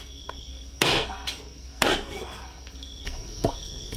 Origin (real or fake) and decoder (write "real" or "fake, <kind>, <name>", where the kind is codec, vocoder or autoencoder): fake, codec, SNAC